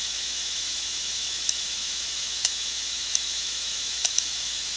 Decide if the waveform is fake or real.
fake